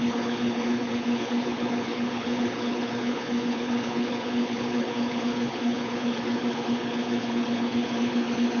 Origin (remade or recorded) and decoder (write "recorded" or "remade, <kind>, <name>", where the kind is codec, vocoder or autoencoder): remade, codec, HILCodec